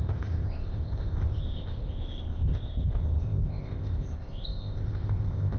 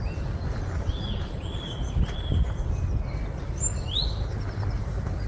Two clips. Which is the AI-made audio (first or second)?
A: first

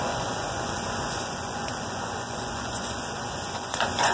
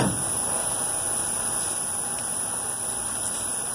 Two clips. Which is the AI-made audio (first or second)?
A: first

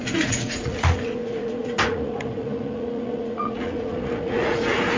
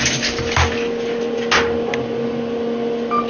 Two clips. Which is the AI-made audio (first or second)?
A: first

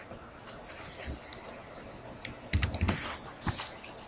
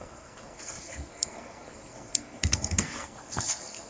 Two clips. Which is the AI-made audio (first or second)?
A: second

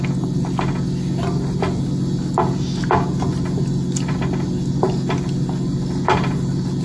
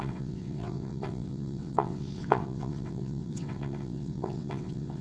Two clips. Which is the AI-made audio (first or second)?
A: second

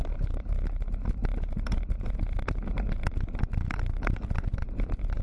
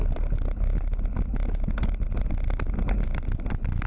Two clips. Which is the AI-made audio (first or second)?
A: first